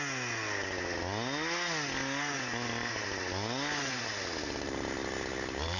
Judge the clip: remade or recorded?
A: recorded